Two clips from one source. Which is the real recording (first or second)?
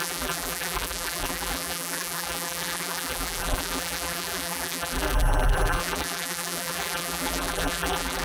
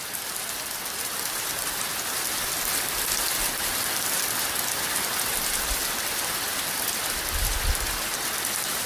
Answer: second